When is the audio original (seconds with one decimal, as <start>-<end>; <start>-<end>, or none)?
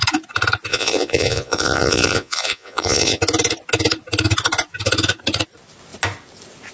0.0-0.7; 3.2-6.7